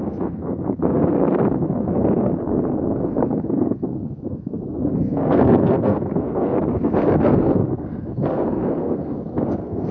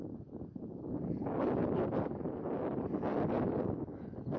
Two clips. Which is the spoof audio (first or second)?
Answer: first